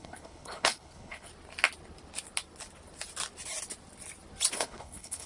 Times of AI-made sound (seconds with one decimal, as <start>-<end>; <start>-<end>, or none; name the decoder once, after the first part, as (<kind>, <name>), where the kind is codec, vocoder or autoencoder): 0.0-1.3 (codec, HILCodec); 4.5-5.3